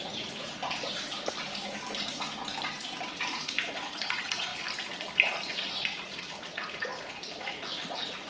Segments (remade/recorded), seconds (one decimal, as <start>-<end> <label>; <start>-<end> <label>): 0.0-0.6 remade; 0.6-3.1 recorded; 3.1-4.5 remade; 4.5-5.5 recorded; 5.5-8.3 remade